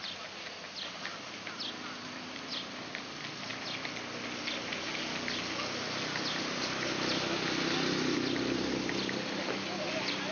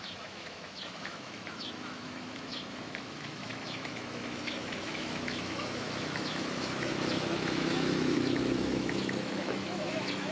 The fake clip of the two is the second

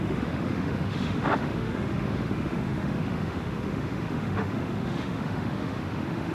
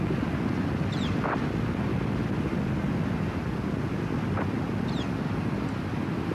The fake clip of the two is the first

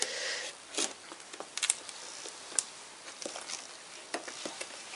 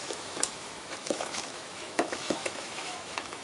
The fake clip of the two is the second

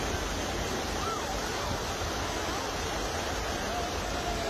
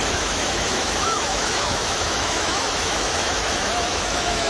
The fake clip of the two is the second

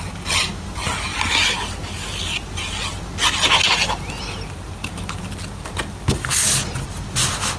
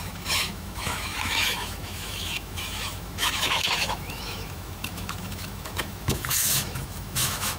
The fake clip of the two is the second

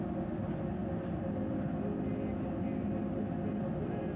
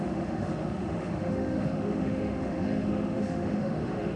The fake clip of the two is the second